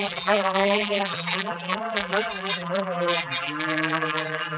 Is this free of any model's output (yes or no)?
no